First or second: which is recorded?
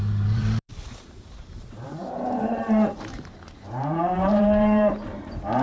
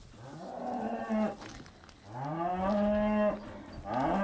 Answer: second